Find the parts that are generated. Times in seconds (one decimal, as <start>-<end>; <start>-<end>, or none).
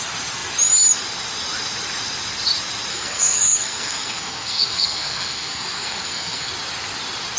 2.9-6.5